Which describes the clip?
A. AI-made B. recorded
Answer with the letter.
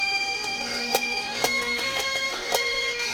A